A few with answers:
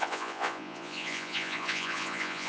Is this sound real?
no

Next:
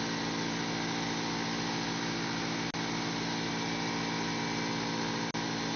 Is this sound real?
yes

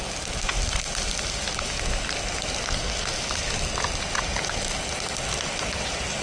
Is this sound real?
yes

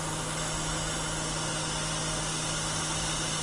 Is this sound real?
yes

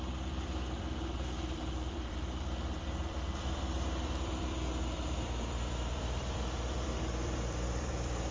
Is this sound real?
no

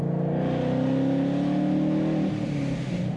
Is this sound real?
yes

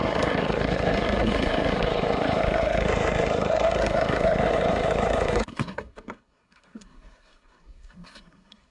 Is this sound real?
no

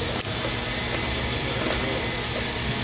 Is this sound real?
yes